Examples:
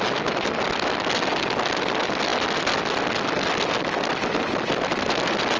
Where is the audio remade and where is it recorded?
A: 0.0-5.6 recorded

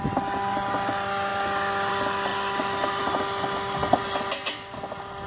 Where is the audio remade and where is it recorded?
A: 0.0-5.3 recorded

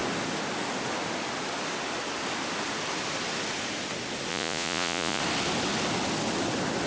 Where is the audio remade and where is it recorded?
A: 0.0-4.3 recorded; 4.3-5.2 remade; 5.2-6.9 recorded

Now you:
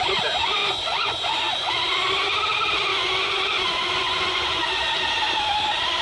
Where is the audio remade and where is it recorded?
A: 0.0-0.6 recorded; 0.6-1.7 remade; 1.7-2.9 recorded; 2.9-4.9 remade; 4.9-6.0 recorded

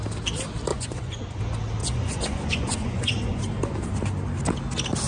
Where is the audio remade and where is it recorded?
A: 0.0-0.7 recorded; 0.7-1.4 remade; 1.4-1.8 recorded; 1.8-3.4 remade; 3.4-5.1 recorded

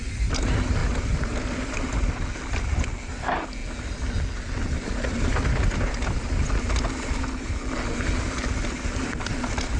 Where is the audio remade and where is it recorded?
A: 0.0-9.8 recorded